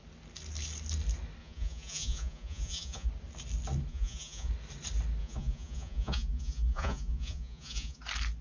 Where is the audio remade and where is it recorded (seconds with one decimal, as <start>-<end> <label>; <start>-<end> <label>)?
0.0-1.4 recorded; 1.4-3.1 remade; 3.1-3.9 recorded; 3.9-4.5 remade; 4.5-5.2 recorded; 5.2-8.0 remade; 8.0-8.4 recorded